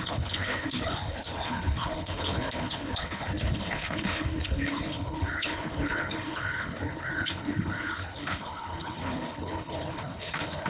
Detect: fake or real fake